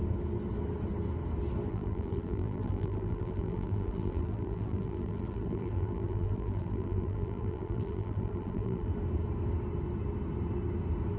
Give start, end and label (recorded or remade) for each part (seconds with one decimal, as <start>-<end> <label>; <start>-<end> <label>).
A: 0.0-1.7 recorded; 1.7-8.9 remade; 8.9-11.2 recorded